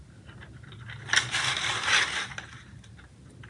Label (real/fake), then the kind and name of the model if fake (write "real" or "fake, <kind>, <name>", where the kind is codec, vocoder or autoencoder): real